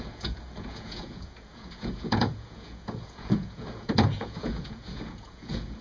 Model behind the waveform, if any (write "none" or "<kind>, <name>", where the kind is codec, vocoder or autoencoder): vocoder, Vocos